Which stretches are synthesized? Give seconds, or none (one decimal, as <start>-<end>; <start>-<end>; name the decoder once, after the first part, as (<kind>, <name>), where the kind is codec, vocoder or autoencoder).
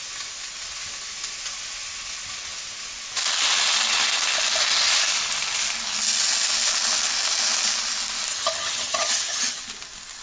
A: 8.3-9.6 (vocoder, HiFi-GAN)